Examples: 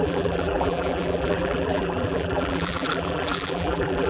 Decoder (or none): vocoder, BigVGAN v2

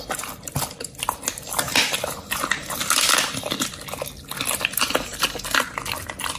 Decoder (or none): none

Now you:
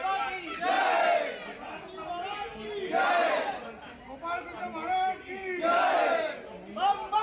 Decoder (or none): none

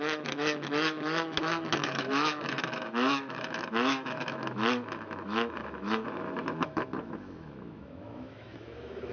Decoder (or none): autoencoder, DAC-VAE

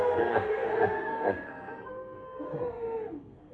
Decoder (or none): codec, SNAC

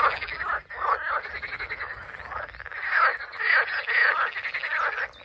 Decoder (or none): none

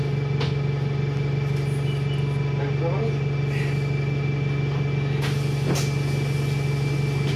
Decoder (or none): none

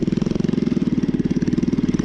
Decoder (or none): none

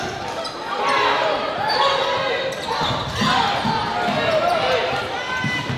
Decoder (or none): none